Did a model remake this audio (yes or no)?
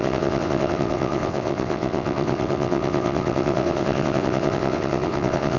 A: yes